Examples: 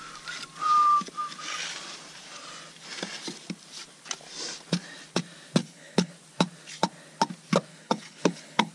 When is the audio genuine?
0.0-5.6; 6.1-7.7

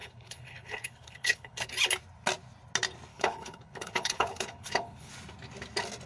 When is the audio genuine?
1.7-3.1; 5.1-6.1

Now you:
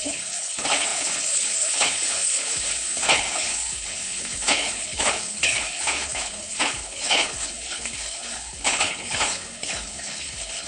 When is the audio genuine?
none

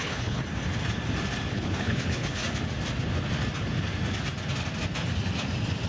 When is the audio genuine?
0.4-1.5; 2.4-5.9

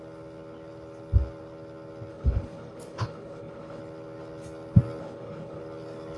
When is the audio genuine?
0.0-2.1; 3.8-5.0; 5.6-6.2

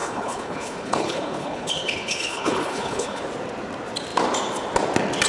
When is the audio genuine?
3.2-5.3

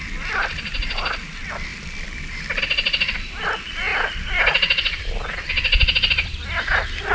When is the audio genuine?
0.0-7.1